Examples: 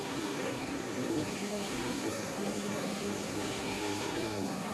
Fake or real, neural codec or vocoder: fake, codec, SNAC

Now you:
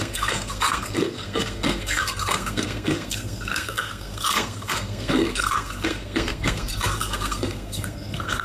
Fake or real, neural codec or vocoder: fake, codec, SNAC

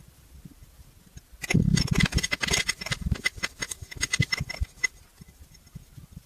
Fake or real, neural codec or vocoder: real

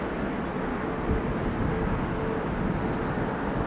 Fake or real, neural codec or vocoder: real